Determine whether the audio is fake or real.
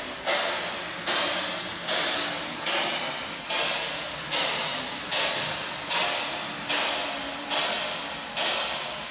real